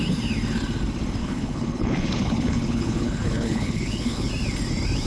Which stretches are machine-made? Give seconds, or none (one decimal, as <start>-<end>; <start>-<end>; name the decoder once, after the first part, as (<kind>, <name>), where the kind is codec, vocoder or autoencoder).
1.2-4.3 (codec, HILCodec)